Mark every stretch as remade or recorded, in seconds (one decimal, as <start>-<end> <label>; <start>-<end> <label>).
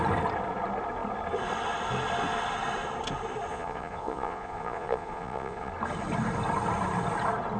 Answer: 0.0-3.5 recorded; 3.5-5.7 remade; 5.7-7.6 recorded